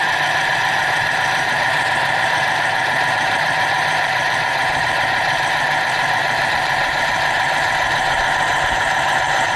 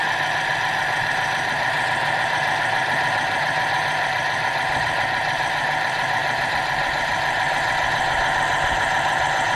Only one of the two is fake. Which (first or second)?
first